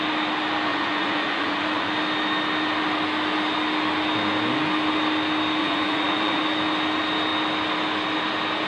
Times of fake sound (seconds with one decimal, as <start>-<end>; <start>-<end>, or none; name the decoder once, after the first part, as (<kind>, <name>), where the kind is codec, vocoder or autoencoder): 0.7-1.9 (vocoder, Vocos); 5.6-6.4